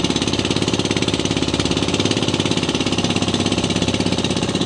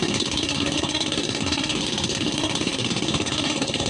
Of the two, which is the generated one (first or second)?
second